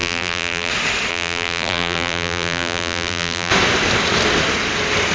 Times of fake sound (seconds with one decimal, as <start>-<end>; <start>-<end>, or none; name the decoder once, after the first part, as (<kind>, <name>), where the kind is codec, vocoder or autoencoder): 0.0-0.7 (vocoder, BigVGAN v2); 1.1-3.5